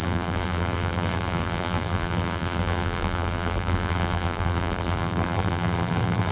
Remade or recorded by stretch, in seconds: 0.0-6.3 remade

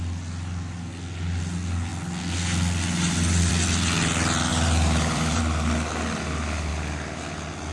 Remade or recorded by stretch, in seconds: 0.0-4.5 recorded; 4.5-5.4 remade; 5.4-7.7 recorded

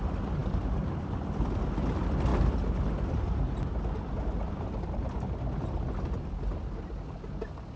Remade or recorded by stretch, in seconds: 0.0-7.8 recorded